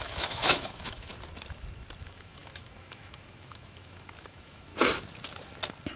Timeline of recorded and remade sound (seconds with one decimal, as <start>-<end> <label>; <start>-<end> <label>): 0.0-1.1 remade; 1.1-2.0 recorded; 2.0-4.7 remade; 4.7-6.0 recorded